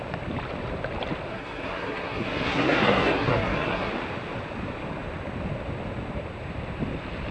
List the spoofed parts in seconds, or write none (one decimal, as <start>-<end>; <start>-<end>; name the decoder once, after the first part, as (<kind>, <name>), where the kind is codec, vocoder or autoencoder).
1.3-3.9 (codec, SNAC)